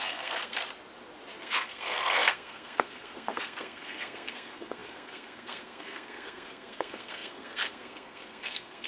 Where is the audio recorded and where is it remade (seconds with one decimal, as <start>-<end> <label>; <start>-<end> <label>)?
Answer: 0.0-0.6 remade; 0.6-1.4 recorded; 1.4-8.9 remade